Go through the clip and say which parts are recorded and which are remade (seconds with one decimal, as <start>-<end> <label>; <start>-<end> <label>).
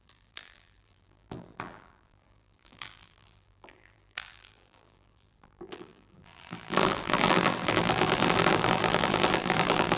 0.0-10.0 remade